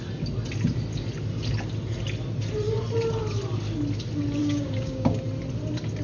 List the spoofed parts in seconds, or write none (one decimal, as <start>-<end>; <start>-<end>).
4.4-5.2